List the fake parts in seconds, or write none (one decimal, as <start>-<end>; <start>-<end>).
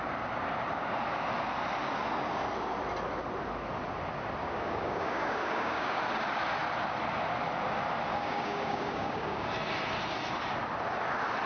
4.4-6.0; 8.1-9.5